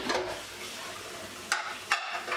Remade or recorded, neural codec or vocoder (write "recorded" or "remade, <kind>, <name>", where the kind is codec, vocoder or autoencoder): recorded